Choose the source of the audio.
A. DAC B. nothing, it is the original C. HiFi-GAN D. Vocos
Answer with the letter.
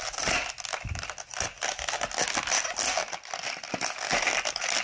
B